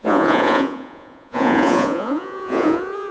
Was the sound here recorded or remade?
remade